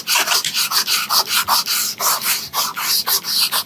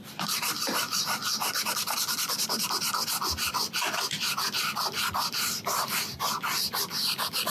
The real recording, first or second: first